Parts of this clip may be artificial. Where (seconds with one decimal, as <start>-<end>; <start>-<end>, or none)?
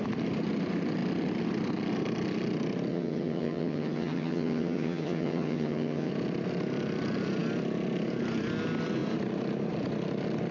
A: 2.9-6.1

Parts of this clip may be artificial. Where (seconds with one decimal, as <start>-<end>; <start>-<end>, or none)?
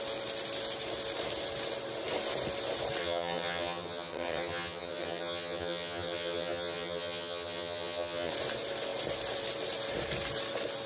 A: 3.0-8.3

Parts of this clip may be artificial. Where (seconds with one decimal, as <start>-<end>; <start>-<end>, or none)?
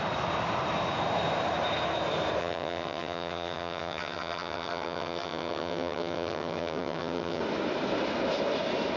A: 2.4-7.4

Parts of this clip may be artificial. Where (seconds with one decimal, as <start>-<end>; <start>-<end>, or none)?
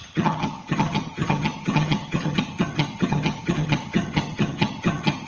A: 0.0-5.3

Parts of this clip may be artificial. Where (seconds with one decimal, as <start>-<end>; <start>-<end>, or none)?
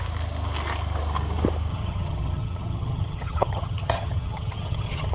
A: 1.7-5.1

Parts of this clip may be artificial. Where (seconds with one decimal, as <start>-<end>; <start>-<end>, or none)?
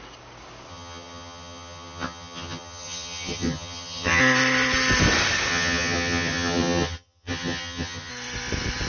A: 0.7-4.2; 5.5-8.1